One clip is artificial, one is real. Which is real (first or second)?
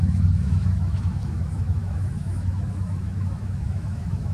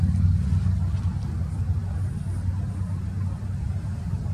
second